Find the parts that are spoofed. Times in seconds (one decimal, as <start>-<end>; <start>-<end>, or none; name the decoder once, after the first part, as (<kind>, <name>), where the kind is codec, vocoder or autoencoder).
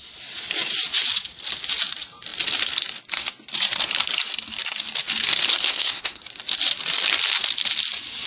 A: 5.7-6.2 (codec, SNAC)